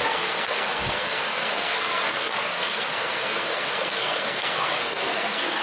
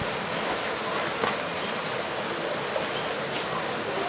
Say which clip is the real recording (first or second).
second